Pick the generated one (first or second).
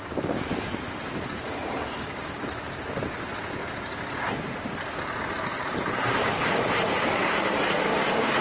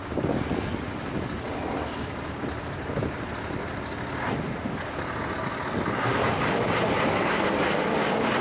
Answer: first